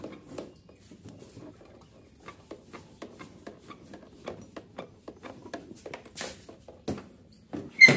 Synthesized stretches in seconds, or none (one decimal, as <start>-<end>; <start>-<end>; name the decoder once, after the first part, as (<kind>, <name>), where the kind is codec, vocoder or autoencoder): none

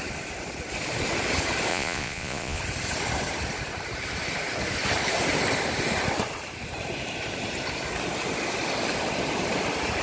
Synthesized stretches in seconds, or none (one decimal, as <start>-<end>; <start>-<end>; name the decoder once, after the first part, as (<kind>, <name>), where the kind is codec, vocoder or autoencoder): 1.7-2.6 (vocoder, Vocos)

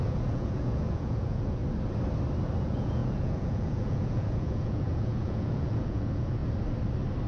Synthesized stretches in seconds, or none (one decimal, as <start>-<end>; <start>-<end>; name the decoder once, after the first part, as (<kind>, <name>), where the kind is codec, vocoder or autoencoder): 0.0-1.6 (vocoder, Vocos); 2.6-6.4

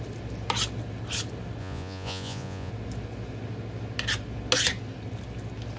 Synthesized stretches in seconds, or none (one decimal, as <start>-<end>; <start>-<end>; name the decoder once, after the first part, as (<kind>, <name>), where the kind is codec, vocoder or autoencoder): 1.6-2.7 (vocoder, Vocos)

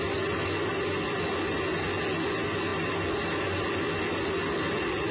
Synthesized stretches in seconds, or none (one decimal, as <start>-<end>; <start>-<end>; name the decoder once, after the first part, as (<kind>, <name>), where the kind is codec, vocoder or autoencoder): none